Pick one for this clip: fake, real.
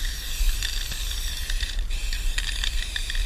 fake